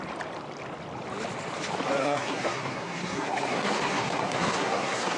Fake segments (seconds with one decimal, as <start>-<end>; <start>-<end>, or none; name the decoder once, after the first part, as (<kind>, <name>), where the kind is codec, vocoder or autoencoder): 2.0-5.2 (codec, SNAC)